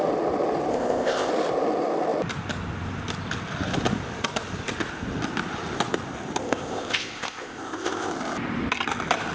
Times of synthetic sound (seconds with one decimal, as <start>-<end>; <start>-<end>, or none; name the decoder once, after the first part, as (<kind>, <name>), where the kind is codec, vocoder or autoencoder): 0.7-1.3 (codec, ZipCodec); 6.4-8.1

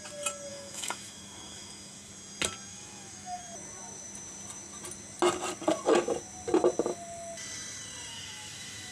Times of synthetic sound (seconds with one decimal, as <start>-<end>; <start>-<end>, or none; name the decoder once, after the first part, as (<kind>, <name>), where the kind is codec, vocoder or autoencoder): 0.5-2.1 (autoencoder, DAC-VAE); 2.7-3.4; 8.1-8.9

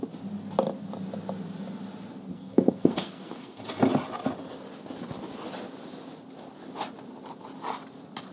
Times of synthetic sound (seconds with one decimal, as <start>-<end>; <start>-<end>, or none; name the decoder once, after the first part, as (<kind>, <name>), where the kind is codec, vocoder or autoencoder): 2.3-3.6 (codec, SNAC)

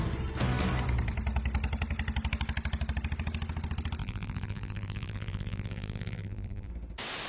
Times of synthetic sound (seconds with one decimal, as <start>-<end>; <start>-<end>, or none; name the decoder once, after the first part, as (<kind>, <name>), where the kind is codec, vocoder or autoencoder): 4.0-6.7 (vocoder, BigVGAN v2)